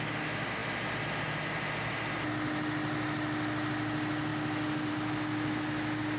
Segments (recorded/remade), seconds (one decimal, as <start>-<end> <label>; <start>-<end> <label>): 0.0-6.2 recorded